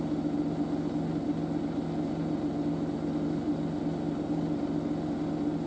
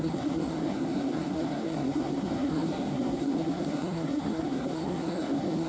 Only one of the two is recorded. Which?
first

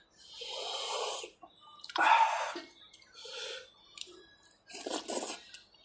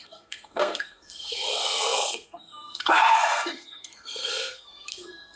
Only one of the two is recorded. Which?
first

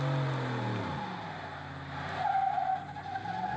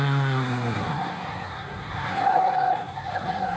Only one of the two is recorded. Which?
first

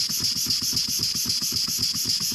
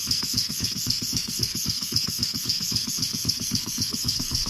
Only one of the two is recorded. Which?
first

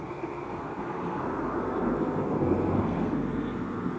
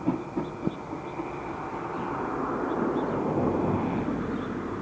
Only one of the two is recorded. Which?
second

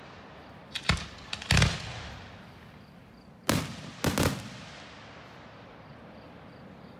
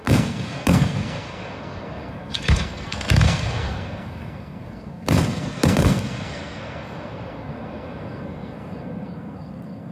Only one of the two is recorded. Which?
first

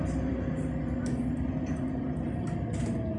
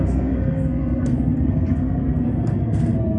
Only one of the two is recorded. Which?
first